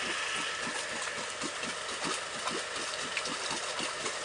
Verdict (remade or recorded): recorded